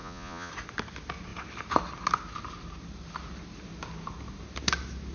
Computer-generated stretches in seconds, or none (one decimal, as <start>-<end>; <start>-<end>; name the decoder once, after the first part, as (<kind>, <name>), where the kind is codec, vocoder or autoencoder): 0.0-0.5 (vocoder, Vocos)